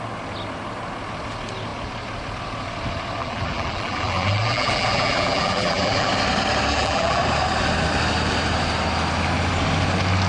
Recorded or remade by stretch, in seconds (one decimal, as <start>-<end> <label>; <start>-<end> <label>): 0.0-3.2 recorded; 3.2-6.1 remade; 6.1-6.7 recorded; 6.7-7.2 remade; 7.2-10.3 recorded